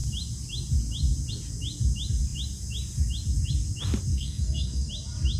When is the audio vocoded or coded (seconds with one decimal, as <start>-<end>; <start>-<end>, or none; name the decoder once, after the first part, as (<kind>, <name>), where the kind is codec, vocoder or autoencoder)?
4.1-4.9 (codec, SNAC)